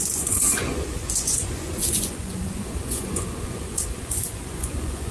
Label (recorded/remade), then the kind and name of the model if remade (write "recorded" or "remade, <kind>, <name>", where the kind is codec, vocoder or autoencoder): remade, vocoder, Vocos